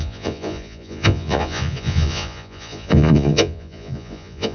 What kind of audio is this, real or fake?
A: fake